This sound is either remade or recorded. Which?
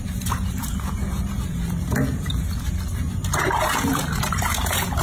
remade